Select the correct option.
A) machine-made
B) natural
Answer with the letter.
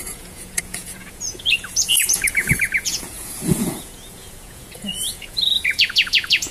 A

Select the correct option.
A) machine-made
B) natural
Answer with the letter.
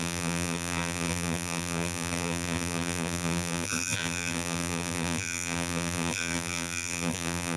A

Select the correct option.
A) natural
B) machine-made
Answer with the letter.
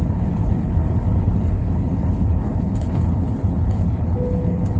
B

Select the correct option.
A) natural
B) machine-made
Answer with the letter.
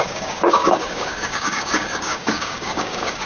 B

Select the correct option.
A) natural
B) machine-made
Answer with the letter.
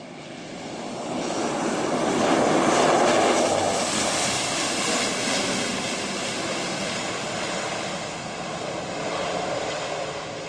A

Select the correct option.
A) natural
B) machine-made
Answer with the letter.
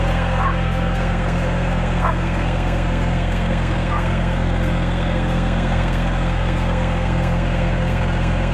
B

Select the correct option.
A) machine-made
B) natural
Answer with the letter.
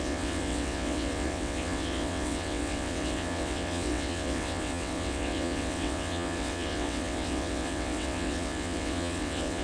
A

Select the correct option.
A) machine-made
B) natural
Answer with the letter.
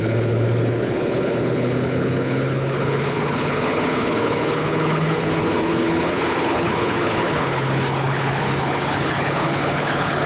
A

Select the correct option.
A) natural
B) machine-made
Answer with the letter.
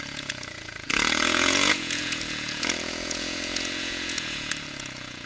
B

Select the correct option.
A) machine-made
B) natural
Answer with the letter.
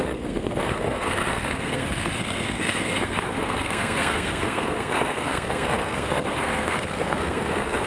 A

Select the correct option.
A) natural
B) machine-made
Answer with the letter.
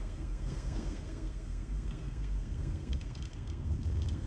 B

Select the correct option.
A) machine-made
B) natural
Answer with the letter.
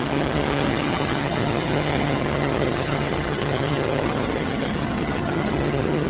A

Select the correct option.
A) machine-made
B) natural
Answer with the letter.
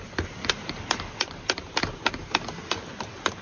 B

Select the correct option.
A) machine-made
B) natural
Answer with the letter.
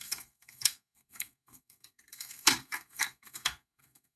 A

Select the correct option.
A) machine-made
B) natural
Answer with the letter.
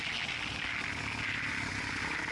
B